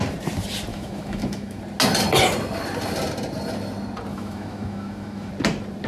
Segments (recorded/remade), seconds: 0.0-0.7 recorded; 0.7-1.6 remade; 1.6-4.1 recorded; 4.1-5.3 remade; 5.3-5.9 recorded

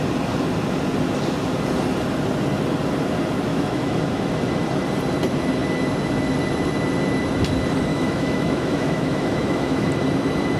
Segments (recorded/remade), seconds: 0.0-3.5 recorded; 3.5-4.3 remade; 4.3-7.9 recorded; 7.9-9.9 remade; 9.9-10.6 recorded

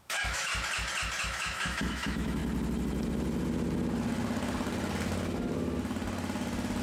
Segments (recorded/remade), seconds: 0.0-0.5 remade; 0.5-1.2 recorded; 1.2-2.4 remade; 2.4-6.8 recorded

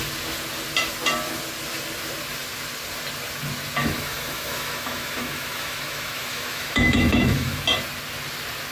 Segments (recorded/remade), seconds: 0.0-3.8 recorded; 3.8-7.6 remade; 7.6-8.7 recorded